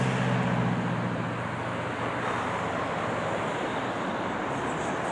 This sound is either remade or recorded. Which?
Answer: recorded